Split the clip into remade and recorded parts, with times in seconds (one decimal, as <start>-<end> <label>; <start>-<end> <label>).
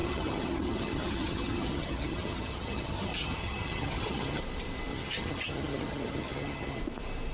0.0-4.4 remade; 4.4-4.9 recorded; 4.9-6.8 remade; 6.8-7.3 recorded